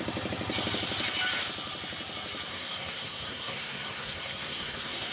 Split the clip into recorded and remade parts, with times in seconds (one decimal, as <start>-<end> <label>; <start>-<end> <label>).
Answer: 0.0-2.5 recorded; 2.5-5.1 remade